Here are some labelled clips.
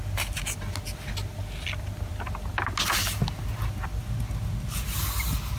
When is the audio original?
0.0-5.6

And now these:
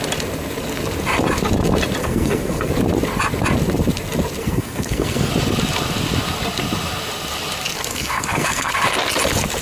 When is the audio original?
0.0-2.0; 2.7-4.4; 5.3-7.9; 8.7-9.6

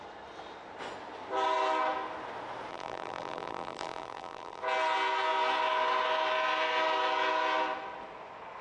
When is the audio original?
0.0-2.7; 4.6-8.6

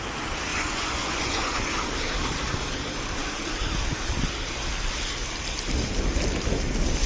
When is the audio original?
0.0-0.5; 1.6-7.1

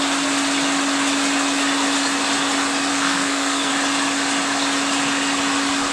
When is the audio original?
0.0-2.9; 3.7-5.9

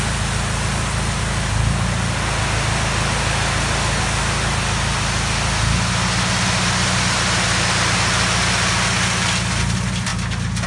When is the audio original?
0.0-10.7